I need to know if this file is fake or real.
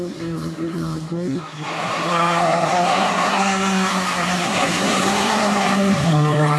fake